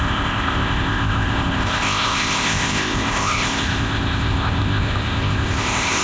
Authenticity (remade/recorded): remade